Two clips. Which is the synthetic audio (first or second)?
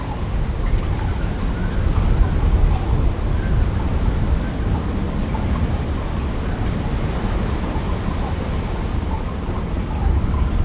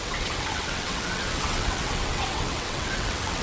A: second